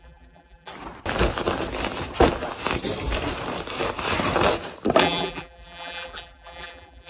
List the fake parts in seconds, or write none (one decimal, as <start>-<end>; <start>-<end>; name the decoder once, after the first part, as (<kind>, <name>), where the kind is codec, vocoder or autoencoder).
0.0-0.7 (vocoder, BigVGAN v2); 5.0-7.1